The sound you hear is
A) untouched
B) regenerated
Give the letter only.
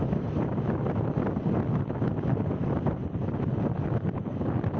A